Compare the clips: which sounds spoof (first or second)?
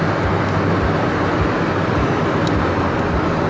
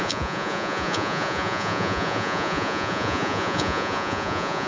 second